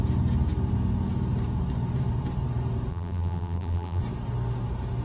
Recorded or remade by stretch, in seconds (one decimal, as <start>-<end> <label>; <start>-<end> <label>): 0.0-2.9 recorded; 2.9-4.0 remade; 4.0-5.0 recorded